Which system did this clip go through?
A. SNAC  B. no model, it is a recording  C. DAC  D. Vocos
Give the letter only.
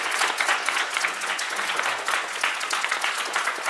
D